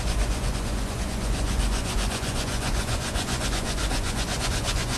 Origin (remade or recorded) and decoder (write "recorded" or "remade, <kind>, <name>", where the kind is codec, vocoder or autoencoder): remade, vocoder, Vocos